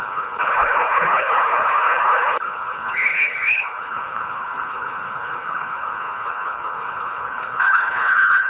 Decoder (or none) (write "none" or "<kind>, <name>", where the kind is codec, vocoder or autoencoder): codec, HILCodec